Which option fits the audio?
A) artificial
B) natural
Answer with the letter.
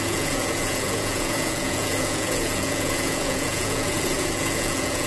A